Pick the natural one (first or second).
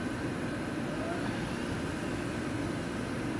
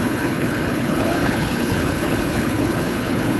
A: first